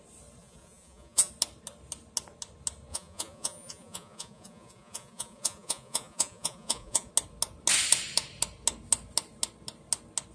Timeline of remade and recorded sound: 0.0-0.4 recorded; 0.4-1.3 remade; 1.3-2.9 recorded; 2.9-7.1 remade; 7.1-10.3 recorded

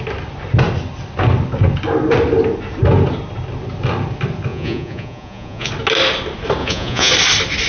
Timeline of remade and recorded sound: 0.0-4.5 recorded; 4.5-5.7 remade; 5.7-6.6 recorded; 6.6-7.1 remade; 7.1-7.7 recorded

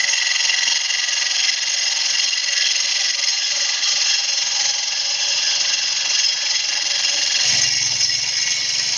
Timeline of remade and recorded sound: 0.0-3.3 recorded; 3.3-6.7 remade; 6.7-9.0 recorded

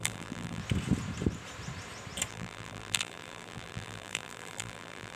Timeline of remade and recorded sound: 0.0-0.6 remade; 0.6-2.3 recorded; 2.3-5.2 remade